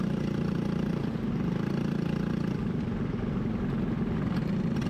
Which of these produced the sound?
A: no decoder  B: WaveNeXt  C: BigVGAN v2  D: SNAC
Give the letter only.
A